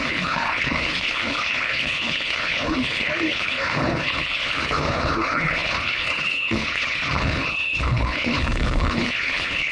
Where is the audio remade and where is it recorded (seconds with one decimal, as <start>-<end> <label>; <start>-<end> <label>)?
0.0-9.7 remade